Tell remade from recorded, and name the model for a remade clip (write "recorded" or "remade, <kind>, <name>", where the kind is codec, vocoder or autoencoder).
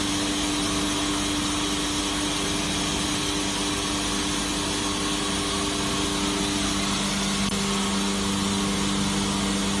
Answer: recorded